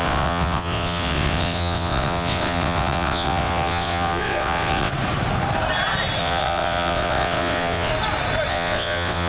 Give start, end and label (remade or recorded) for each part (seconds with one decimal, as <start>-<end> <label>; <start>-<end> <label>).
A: 0.0-4.9 remade; 4.9-6.2 recorded; 6.2-7.9 remade; 7.9-8.5 recorded; 8.5-9.3 remade